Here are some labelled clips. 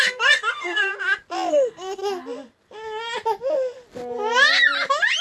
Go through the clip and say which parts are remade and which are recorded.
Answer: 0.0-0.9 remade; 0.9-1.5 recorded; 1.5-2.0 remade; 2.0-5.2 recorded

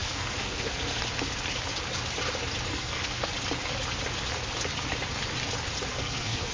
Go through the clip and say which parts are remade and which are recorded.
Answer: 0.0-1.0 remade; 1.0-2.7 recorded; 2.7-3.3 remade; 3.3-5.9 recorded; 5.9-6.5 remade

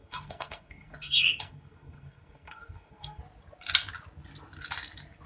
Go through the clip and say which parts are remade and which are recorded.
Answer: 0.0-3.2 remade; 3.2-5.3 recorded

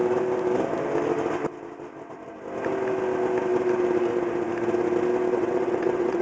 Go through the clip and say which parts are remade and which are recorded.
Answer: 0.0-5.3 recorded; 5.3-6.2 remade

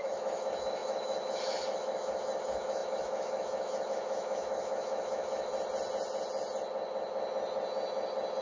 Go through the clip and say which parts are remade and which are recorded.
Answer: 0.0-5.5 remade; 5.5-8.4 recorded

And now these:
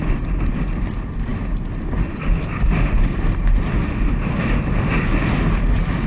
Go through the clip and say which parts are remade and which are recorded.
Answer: 0.0-6.1 recorded